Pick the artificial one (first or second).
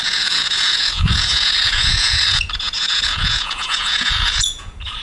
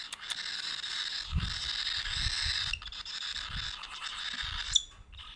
first